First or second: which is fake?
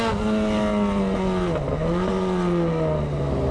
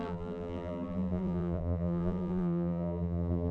second